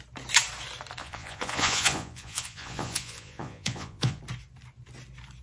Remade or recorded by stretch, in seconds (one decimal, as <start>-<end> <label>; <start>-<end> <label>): 0.0-1.0 recorded; 1.0-4.2 remade; 4.2-5.4 recorded